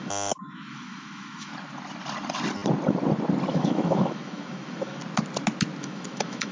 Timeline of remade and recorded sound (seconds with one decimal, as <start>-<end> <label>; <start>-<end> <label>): 0.0-1.5 remade; 1.5-3.5 recorded; 3.5-5.0 remade; 5.0-5.8 recorded; 5.8-6.5 remade